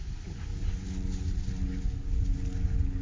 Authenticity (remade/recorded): recorded